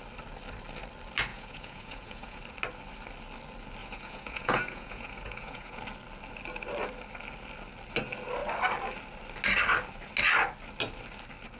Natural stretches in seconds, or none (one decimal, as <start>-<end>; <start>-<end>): 0.0-1.3; 2.4-3.8; 5.8-11.6